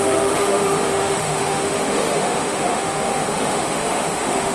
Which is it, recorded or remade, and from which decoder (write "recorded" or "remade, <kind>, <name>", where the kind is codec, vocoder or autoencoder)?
remade, autoencoder, DAC-VAE